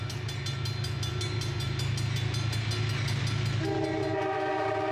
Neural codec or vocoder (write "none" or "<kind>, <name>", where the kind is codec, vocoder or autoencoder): none